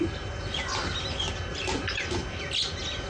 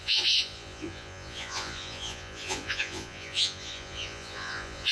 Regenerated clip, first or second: second